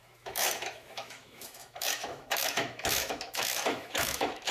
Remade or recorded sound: remade